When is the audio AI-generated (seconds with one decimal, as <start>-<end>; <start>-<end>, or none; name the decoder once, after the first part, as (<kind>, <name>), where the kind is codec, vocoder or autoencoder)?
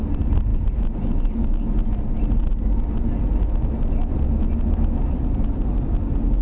none